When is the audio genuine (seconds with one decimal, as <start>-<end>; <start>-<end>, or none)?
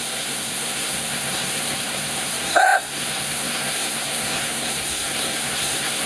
none